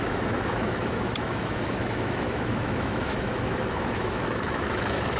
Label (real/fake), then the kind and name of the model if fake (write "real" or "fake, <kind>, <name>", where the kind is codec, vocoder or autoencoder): fake, autoencoder, DAC-VAE